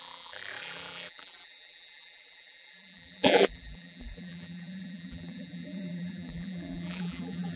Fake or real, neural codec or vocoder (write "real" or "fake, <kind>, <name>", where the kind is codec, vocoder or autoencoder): fake, vocoder, BigVGAN v2